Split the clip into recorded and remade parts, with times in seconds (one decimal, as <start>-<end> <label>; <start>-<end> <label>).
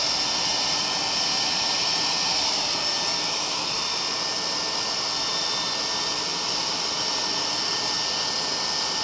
0.0-9.0 recorded